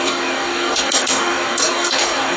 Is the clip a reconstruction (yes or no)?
yes